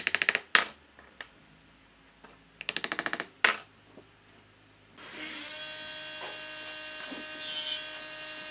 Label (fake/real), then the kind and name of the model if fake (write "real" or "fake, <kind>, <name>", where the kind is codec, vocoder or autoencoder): real